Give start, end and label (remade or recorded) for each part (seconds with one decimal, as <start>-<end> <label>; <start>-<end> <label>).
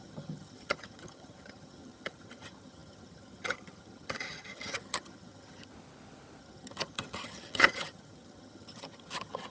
0.0-5.7 remade; 5.7-6.4 recorded; 6.4-9.5 remade